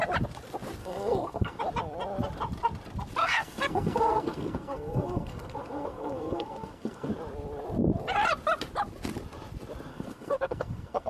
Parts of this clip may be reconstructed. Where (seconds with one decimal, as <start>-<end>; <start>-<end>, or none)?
0.8-1.6; 3.2-7.1; 9.9-11.1